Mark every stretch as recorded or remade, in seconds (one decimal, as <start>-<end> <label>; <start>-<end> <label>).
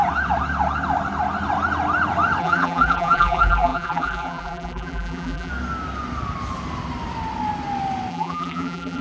0.0-2.4 recorded; 2.4-5.5 remade; 5.5-8.1 recorded; 8.1-9.0 remade